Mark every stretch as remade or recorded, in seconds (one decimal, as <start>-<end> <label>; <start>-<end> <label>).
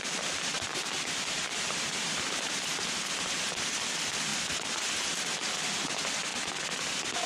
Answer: 0.0-7.3 recorded